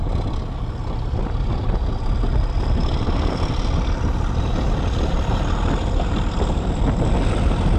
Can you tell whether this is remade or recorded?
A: recorded